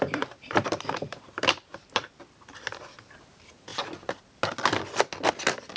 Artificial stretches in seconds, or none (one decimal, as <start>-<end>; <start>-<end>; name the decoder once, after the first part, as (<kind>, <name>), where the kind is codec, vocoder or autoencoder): 0.0-1.7 (vocoder, BigVGAN v2); 2.8-3.7; 5.3-5.8